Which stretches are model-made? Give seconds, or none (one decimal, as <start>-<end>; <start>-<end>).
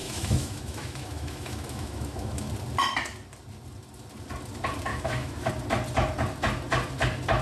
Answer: 0.0-2.5; 4.9-5.5